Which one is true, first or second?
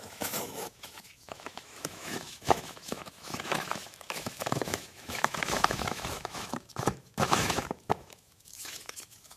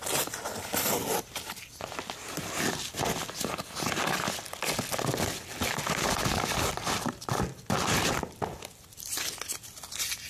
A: second